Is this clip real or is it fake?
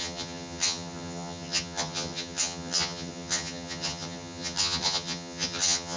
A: fake